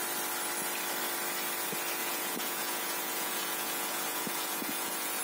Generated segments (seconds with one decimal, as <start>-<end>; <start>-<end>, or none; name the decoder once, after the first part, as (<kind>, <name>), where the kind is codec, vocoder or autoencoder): 2.0-5.2 (vocoder, Vocos)